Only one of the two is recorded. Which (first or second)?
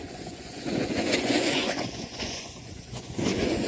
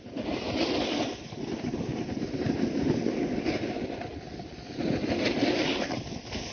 second